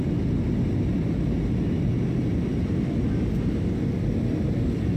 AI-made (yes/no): no